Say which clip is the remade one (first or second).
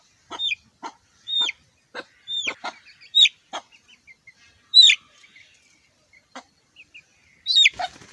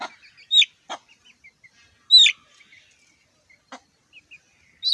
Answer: first